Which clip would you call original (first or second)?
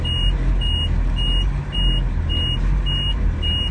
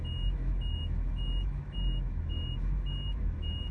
first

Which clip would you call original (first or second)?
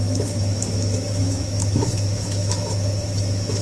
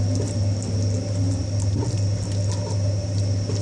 second